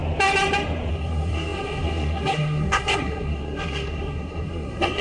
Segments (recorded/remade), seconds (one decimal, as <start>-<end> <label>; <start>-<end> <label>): 0.0-0.9 recorded; 0.9-5.0 remade